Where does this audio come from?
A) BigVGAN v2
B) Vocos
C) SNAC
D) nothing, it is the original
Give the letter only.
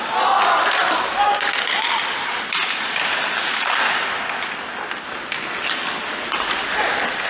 D